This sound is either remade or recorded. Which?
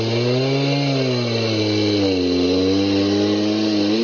recorded